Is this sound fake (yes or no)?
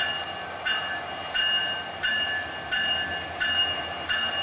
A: no